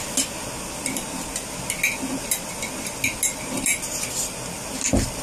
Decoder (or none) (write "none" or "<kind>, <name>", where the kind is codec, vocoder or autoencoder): none